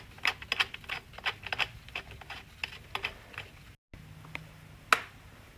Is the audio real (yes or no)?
yes